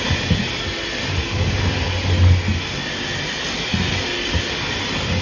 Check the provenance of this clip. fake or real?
real